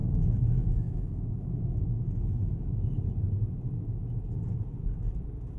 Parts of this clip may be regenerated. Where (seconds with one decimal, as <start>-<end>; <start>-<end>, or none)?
0.0-2.7